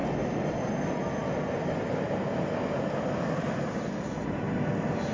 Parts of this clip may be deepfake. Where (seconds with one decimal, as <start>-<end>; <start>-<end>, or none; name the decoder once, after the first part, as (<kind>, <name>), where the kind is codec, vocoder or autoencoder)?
none